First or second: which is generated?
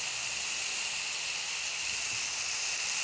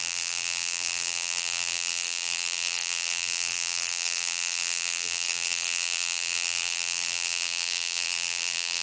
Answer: second